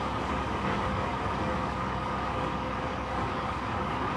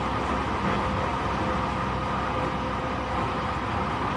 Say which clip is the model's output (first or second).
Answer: first